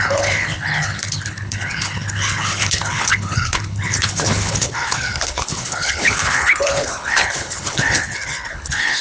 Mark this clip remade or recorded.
remade